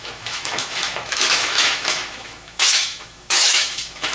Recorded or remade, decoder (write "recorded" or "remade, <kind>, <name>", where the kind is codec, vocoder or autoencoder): remade, autoencoder, DAC-VAE